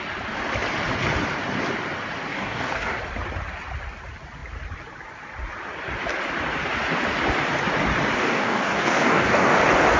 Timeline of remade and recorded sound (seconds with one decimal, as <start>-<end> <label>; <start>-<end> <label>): 0.0-2.3 recorded; 2.3-3.0 remade; 3.0-8.2 recorded; 8.2-9.6 remade; 9.6-10.0 recorded